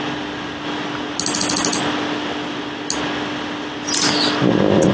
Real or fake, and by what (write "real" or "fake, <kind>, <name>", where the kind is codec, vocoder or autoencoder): real